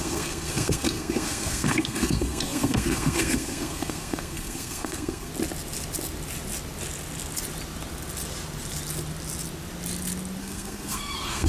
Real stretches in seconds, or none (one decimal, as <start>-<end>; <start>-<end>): 5.3-10.4